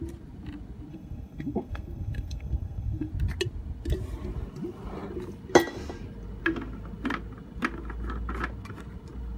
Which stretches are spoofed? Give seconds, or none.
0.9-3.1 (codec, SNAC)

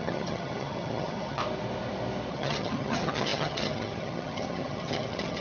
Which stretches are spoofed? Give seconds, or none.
0.0-1.4 (vocoder, HiFi-GAN); 2.3-5.4

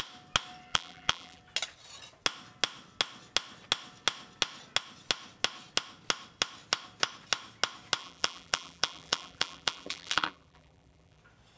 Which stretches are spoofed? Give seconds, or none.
0.7-1.4 (vocoder, BigVGAN v2); 8.0-11.2

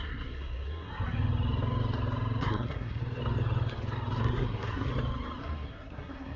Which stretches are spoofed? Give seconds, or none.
0.0-0.9 (codec, SNAC); 2.4-3.0; 4.2-4.9; 5.4-6.4

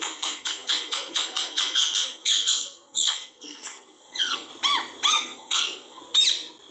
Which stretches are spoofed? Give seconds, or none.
0.0-4.5 (codec, SNAC); 5.1-6.0

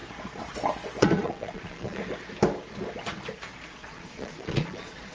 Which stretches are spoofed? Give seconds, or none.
1.0-2.0 (vocoder, Vocos); 3.7-5.1

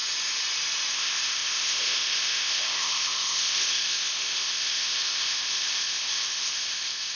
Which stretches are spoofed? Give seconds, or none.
0.9-7.2 (codec, ZipCodec)

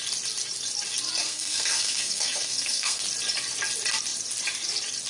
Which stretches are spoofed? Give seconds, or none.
1.2-3.0 (codec, SNAC)